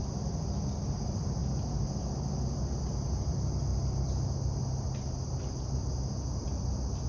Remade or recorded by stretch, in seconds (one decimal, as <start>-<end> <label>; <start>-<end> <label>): 0.0-7.1 recorded